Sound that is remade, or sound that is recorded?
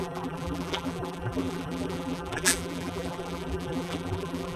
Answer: remade